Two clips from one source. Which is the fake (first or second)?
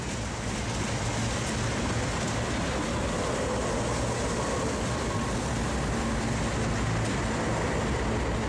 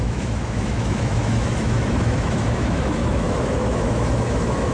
second